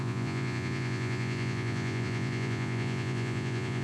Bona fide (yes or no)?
no